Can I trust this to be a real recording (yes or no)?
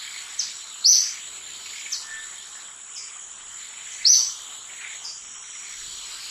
yes